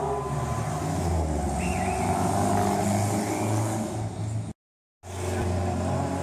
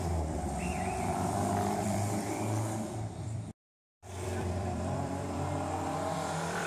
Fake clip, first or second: second